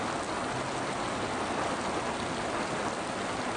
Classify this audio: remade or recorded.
recorded